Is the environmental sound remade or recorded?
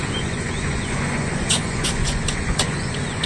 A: remade